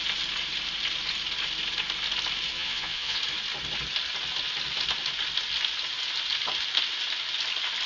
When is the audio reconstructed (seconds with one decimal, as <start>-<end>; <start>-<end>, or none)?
2.5-3.2